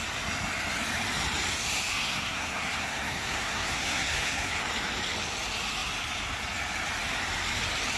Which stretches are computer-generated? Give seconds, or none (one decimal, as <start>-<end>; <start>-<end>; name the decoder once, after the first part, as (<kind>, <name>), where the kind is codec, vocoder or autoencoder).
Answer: 1.9-4.6 (codec, SNAC)